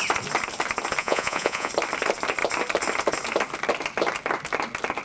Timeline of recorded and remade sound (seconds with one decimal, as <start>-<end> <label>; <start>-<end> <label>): 0.0-1.0 recorded; 1.0-1.7 remade; 1.7-5.0 recorded